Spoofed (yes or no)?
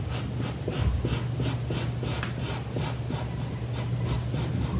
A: no